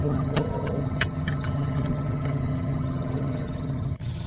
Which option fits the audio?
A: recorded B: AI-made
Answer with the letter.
B